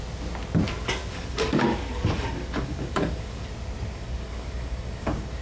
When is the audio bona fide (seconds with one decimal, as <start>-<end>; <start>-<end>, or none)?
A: 0.0-1.0; 3.5-3.9